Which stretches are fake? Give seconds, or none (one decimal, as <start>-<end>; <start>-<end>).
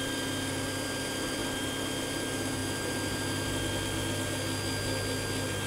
none